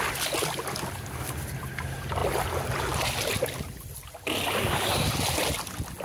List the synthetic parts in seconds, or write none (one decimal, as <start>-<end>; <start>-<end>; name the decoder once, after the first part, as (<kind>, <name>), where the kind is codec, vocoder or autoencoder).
none